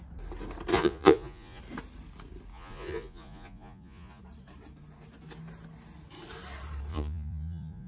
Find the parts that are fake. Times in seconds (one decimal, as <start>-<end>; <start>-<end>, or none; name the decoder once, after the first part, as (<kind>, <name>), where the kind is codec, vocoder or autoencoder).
0.7-1.6 (vocoder, Vocos); 2.5-4.2; 6.9-7.9